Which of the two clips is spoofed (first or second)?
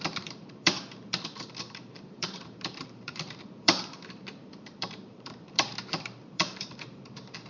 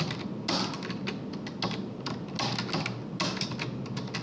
first